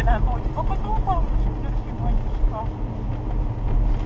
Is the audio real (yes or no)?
yes